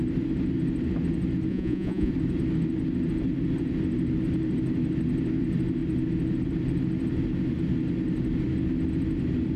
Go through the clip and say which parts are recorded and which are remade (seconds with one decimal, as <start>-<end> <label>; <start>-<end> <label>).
0.0-1.5 recorded; 1.5-2.1 remade; 2.1-9.6 recorded

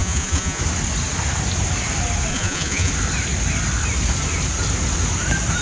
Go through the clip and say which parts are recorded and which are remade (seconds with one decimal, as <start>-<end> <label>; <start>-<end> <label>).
0.0-0.6 remade; 0.6-2.3 recorded; 2.3-2.9 remade; 2.9-5.6 recorded

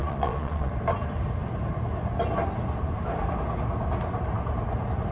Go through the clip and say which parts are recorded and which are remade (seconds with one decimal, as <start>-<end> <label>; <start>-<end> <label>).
0.0-0.7 remade; 0.7-5.1 recorded

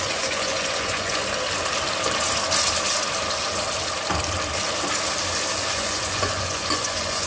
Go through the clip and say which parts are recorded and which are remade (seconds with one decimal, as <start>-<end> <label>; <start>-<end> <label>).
0.0-1.2 remade; 1.2-5.6 recorded; 5.6-7.3 remade

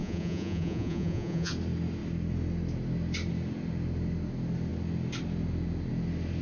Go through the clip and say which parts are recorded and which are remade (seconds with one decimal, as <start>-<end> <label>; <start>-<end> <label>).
0.0-1.5 remade; 1.5-6.4 recorded

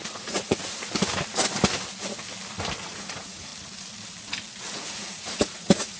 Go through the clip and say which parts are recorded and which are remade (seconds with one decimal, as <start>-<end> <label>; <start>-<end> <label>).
0.0-0.6 remade; 0.6-2.8 recorded; 2.8-3.5 remade; 3.5-4.7 recorded; 4.7-6.0 remade

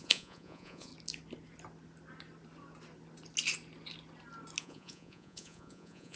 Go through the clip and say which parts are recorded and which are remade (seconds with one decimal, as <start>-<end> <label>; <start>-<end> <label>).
0.0-0.9 remade; 0.9-4.6 recorded; 4.6-6.2 remade

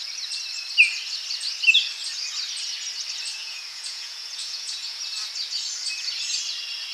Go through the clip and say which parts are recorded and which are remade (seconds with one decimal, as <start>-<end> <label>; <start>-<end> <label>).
0.0-3.4 recorded; 3.4-5.0 remade; 5.0-6.9 recorded